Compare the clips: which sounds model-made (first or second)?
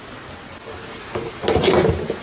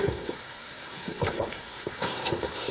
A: second